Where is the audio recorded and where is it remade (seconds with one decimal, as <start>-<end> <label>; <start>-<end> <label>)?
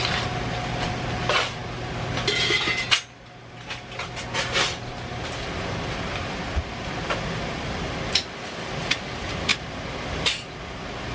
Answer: 0.0-11.1 recorded